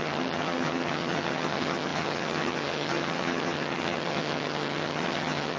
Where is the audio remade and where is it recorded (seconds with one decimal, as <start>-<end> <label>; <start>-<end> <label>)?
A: 0.0-5.6 remade

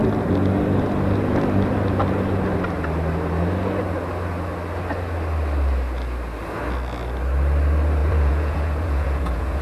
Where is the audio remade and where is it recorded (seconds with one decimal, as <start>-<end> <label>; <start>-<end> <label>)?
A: 0.0-8.0 recorded; 8.0-9.6 remade